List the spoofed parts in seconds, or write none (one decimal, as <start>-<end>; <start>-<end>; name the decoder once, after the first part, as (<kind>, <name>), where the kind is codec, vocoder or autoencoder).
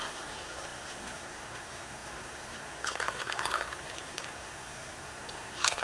0.0-5.8 (codec, SNAC)